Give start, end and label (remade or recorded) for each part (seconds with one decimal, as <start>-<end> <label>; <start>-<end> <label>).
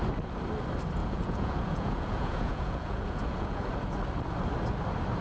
0.0-1.0 recorded; 1.0-3.7 remade; 3.7-5.2 recorded